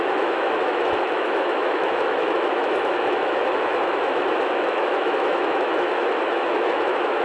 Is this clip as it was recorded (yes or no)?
no